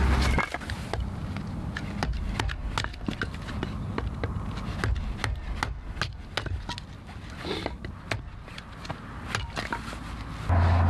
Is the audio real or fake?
real